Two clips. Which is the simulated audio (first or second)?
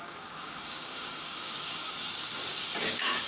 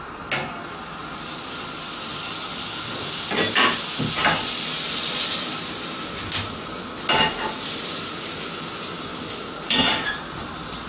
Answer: first